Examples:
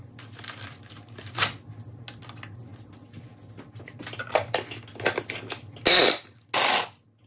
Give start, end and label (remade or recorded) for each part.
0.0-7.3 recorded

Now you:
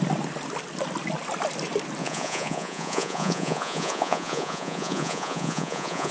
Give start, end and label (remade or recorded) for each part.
0.0-2.0 recorded; 2.0-6.1 remade

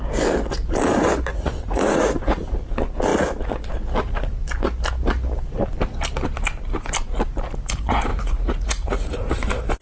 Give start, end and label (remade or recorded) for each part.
0.0-1.3 recorded; 1.3-2.6 remade; 2.6-8.1 recorded; 8.1-9.3 remade; 9.3-9.8 recorded

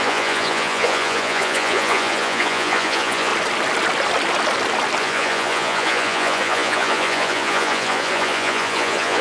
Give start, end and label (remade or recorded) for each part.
0.0-3.3 remade; 3.3-5.0 recorded; 5.0-9.2 remade

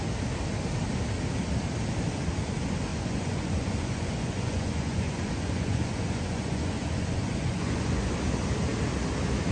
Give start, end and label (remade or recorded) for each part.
0.0-2.9 recorded; 2.9-8.1 remade; 8.1-9.5 recorded